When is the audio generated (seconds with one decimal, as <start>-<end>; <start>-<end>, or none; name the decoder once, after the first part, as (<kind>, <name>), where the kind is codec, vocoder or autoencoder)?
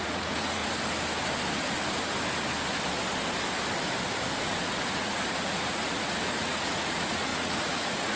0.0-0.6 (vocoder, Vocos); 4.4-8.2